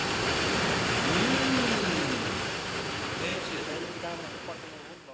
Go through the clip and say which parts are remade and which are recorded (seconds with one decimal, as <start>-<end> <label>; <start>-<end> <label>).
0.0-3.3 recorded; 3.3-4.0 remade; 4.0-5.1 recorded